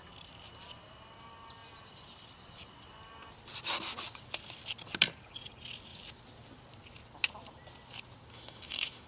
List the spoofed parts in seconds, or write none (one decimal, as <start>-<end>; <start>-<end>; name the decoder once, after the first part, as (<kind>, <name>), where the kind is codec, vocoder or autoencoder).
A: 8.3-9.1 (autoencoder, DAC-VAE)